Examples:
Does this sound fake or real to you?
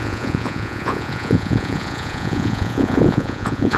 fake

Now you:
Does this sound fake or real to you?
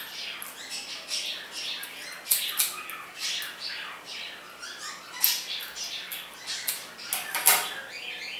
real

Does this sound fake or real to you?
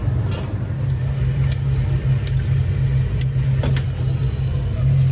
real